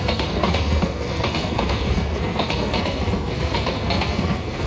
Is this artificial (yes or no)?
yes